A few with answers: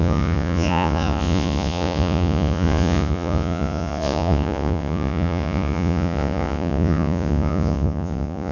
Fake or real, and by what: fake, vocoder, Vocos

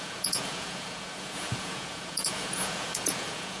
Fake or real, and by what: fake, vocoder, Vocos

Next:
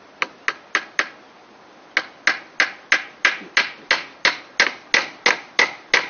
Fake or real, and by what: real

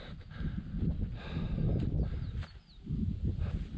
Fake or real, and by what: real